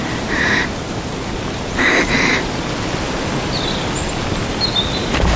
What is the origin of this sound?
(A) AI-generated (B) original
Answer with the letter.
B